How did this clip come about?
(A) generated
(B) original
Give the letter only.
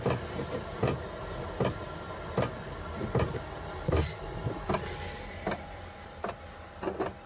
B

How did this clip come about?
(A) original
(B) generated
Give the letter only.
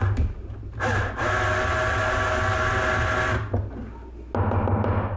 A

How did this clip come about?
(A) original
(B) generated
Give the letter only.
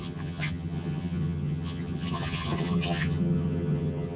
B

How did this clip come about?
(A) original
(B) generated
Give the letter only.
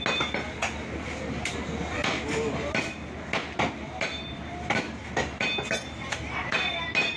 A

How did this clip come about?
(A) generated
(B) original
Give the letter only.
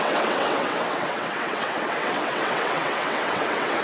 A